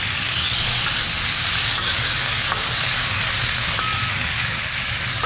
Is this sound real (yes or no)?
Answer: no